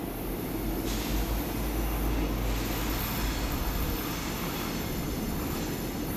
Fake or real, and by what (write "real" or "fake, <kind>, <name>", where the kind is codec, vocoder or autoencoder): real